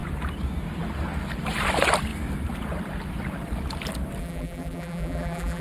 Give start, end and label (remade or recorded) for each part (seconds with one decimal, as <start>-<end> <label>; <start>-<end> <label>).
0.0-4.2 recorded; 4.2-5.6 remade